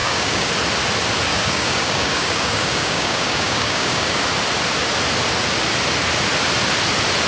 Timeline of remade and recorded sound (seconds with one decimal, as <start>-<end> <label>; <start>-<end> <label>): 0.0-0.5 remade; 0.5-1.3 recorded; 1.3-4.2 remade; 4.2-7.3 recorded